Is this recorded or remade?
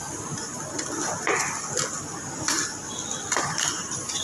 recorded